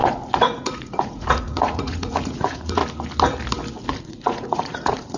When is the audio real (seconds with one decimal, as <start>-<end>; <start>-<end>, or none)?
2.8-4.0